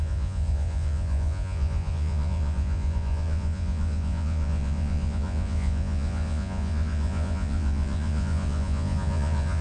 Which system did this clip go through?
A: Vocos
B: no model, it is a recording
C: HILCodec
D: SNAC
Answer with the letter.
A